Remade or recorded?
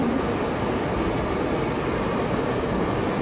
recorded